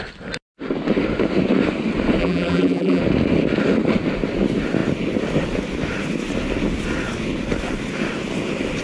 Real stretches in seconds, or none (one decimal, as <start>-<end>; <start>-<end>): 0.0-2.2; 3.0-8.8